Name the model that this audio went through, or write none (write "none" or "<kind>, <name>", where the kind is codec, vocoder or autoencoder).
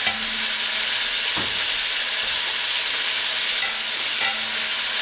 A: none